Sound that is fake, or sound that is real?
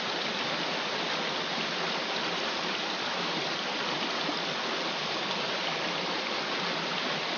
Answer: real